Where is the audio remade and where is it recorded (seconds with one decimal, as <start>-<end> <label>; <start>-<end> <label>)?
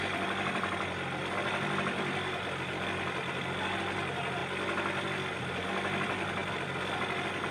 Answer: 0.0-7.5 recorded